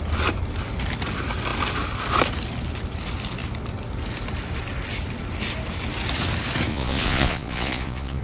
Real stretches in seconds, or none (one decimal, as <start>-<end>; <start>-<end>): 0.0-6.7